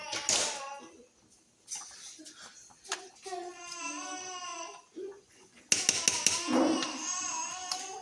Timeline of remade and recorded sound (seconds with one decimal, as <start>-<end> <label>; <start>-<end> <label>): 0.0-4.5 recorded; 4.5-5.6 remade; 5.6-8.0 recorded